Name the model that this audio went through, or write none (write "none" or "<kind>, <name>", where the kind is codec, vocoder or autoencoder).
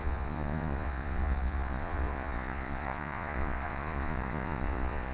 vocoder, Vocos